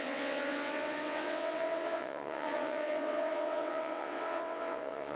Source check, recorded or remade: remade